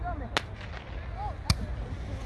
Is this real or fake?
real